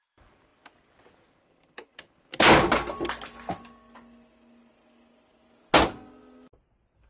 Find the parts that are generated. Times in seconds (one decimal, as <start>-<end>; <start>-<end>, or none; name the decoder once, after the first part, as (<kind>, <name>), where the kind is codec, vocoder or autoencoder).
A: none